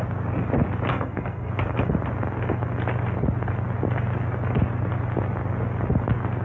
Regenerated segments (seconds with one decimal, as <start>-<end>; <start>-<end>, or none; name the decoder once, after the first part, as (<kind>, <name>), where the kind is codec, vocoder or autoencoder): 0.9-1.5 (codec, SNAC)